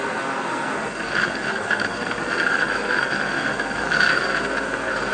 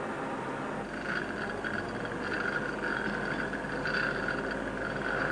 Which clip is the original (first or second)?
second